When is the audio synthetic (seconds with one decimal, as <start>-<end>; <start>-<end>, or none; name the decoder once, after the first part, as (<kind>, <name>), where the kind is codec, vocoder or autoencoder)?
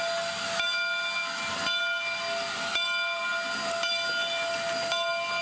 none